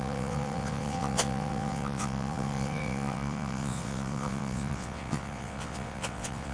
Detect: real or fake fake